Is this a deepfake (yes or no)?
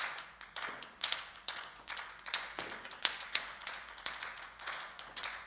yes